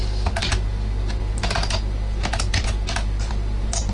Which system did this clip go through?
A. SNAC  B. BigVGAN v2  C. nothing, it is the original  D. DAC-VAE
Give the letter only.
C